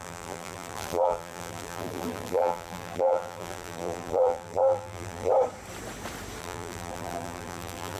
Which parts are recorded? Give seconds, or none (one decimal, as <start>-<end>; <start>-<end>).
5.3-6.4